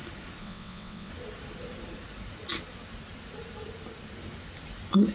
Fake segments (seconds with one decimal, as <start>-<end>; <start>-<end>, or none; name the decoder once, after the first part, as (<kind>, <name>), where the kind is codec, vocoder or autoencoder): 0.4-1.1 (vocoder, WaveNeXt)